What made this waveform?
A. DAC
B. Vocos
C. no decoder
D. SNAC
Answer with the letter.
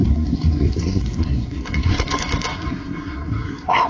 D